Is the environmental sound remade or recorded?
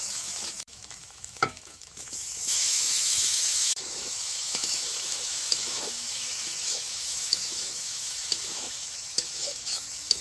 remade